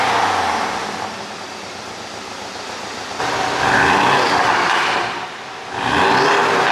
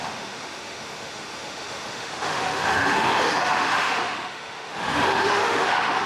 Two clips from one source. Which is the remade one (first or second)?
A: second